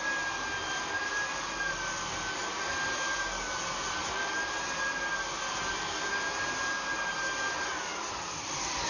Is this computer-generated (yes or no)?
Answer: no